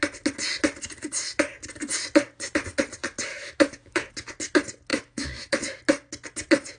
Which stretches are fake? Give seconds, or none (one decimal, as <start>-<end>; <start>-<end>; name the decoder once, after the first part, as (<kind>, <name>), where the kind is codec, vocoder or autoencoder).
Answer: 3.3-4.1 (autoencoder, DAC-VAE); 4.9-5.6